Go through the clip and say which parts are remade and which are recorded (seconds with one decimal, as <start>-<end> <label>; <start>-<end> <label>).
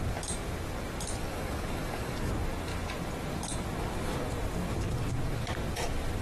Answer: 0.0-1.2 recorded; 1.2-2.3 remade; 2.3-6.2 recorded